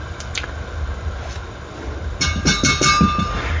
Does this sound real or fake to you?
real